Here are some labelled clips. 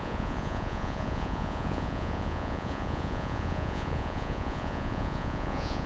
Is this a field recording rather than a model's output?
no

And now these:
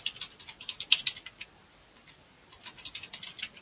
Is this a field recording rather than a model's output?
yes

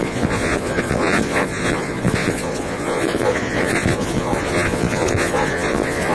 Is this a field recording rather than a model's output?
no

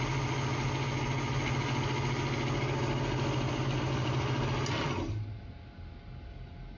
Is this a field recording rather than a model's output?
yes